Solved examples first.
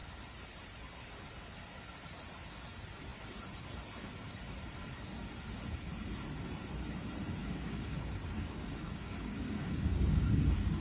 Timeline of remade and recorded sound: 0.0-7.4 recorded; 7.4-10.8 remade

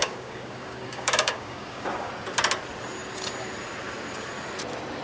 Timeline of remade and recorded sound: 0.0-2.1 remade; 2.1-5.0 recorded

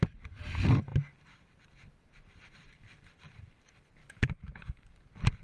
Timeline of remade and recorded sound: 0.0-4.0 recorded; 4.0-4.9 remade; 4.9-5.4 recorded

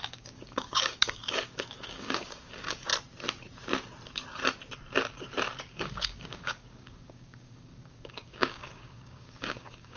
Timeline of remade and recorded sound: 0.0-2.9 remade; 2.9-5.6 recorded; 5.6-10.0 remade

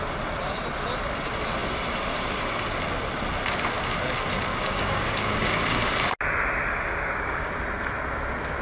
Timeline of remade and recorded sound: 0.0-4.5 recorded; 4.5-5.8 remade; 5.8-6.7 recorded; 6.7-7.5 remade; 7.5-8.6 recorded

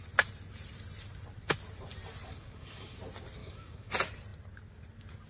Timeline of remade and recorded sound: 0.0-2.3 recorded; 2.3-3.0 remade; 3.0-3.4 recorded; 3.4-3.9 remade; 3.9-5.3 recorded

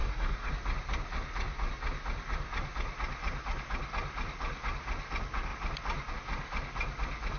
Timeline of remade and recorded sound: 0.0-0.5 remade; 0.5-7.4 recorded